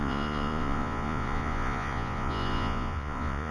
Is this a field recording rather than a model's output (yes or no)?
no